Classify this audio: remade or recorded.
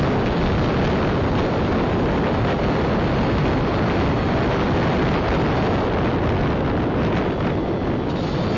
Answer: recorded